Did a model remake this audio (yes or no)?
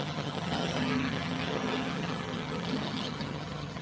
yes